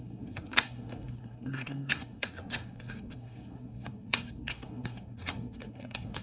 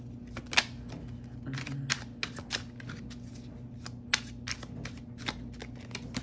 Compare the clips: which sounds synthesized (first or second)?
first